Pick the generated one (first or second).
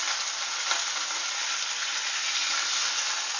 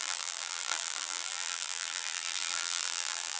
second